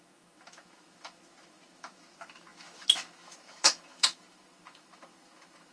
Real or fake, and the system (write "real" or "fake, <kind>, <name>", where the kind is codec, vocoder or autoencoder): fake, autoencoder, DAC-VAE